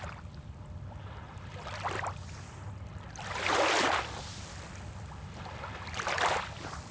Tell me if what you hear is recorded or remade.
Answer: recorded